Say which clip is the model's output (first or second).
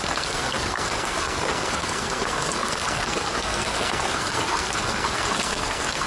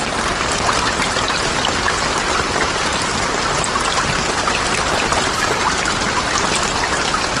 first